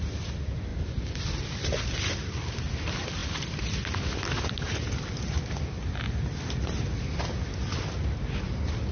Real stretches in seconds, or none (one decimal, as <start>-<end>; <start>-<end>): 0.0-8.9